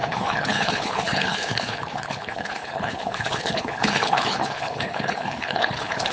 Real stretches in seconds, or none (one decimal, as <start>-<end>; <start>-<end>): none